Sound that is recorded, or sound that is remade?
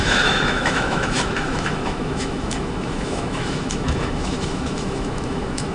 remade